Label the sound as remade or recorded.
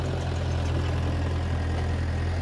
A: recorded